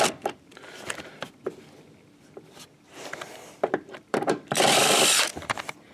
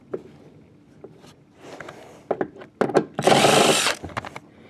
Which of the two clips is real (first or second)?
second